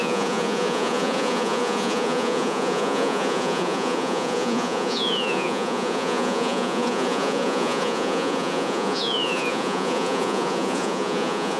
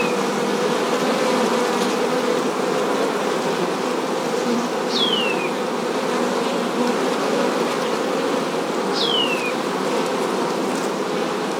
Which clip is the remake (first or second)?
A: first